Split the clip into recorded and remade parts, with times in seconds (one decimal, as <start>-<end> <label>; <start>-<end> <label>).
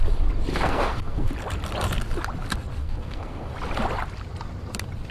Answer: 0.0-0.5 recorded; 0.5-1.3 remade; 1.3-2.8 recorded; 2.8-3.5 remade; 3.5-5.1 recorded